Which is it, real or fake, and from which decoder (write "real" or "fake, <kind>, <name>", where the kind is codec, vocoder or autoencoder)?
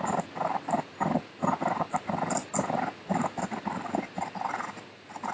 real